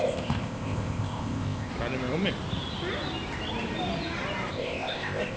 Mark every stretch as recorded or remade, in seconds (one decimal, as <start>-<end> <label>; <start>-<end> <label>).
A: 0.0-1.7 remade; 1.7-4.5 recorded; 4.5-5.4 remade